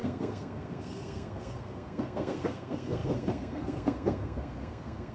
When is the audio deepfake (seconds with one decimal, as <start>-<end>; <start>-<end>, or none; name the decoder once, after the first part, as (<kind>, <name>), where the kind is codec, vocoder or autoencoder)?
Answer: 0.0-5.1 (codec, SNAC)